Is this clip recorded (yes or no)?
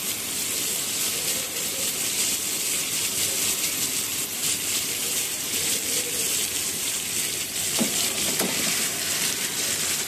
no